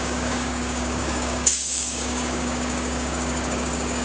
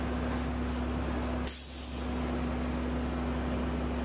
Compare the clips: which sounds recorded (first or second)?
second